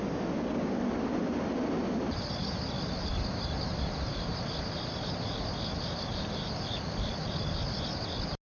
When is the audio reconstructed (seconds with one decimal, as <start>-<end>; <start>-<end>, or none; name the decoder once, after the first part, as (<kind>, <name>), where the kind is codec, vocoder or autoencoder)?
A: none

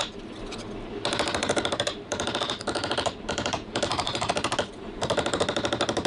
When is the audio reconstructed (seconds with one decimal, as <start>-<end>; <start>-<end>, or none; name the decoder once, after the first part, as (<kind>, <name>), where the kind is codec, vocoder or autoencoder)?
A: 1.4-4.3 (vocoder, BigVGAN v2)

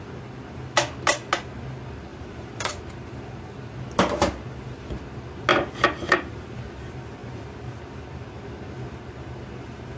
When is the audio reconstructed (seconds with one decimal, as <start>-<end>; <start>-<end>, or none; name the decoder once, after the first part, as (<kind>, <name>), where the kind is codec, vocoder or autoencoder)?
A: 2.1-2.7 (vocoder, BigVGAN v2); 5.5-6.6

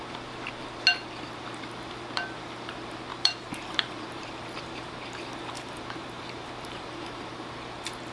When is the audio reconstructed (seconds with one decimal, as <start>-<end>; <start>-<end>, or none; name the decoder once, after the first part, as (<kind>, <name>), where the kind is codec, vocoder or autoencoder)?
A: 3.1-7.3 (vocoder, BigVGAN v2)

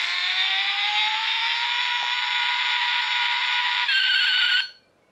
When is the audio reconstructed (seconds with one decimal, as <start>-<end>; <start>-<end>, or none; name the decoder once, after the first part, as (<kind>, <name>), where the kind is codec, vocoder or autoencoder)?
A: 0.0-1.4 (vocoder, BigVGAN v2); 2.5-5.1

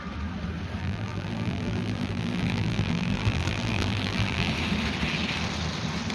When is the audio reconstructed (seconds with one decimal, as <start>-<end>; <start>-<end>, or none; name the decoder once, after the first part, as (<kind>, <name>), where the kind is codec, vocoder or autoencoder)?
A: 0.8-4.5 (vocoder, BigVGAN v2)